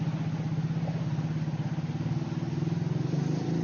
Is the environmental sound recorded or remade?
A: recorded